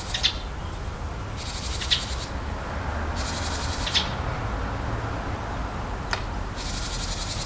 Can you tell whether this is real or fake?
real